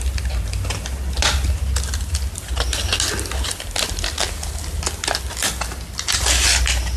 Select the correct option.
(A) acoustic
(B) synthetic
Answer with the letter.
A